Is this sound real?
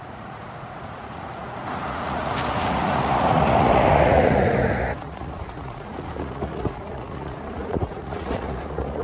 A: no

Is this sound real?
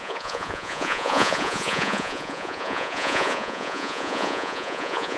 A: no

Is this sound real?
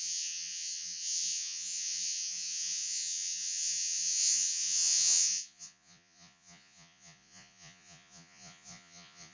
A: no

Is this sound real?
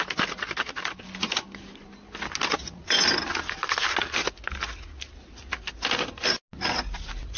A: yes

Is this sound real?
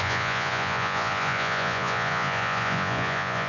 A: no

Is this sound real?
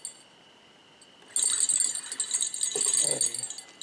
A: yes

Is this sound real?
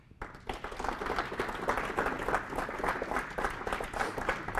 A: yes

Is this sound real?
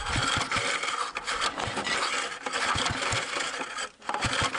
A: yes